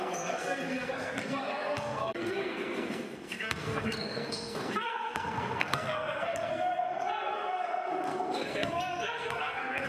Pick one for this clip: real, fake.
fake